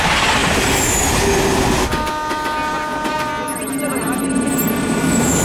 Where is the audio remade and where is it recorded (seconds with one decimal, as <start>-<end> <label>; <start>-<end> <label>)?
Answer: 0.0-5.4 recorded